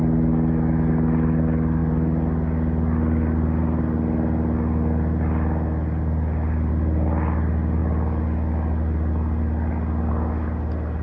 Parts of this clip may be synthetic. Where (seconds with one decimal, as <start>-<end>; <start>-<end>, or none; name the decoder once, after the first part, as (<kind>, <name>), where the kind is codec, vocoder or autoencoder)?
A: none